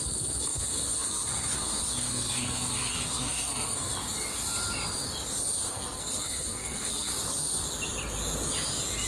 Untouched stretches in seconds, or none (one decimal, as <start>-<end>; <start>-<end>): 3.9-5.7; 7.1-9.1